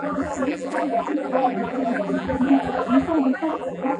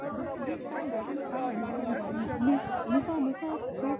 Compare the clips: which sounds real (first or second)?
second